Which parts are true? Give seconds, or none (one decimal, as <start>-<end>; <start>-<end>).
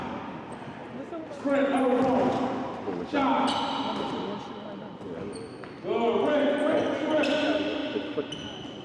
0.0-8.8